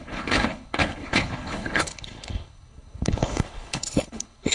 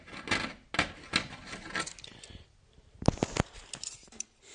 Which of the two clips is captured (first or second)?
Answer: second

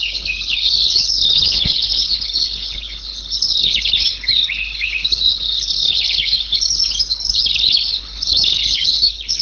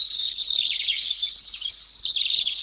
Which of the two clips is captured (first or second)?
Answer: second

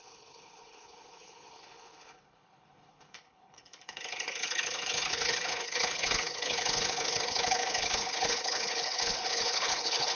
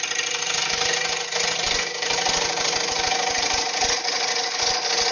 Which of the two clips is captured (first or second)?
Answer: second